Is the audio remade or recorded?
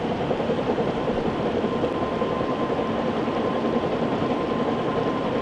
recorded